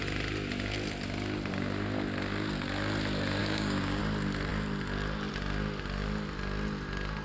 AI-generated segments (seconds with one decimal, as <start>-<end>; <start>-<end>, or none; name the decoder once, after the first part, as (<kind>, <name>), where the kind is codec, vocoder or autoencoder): 3.4-4.0 (codec, DAC)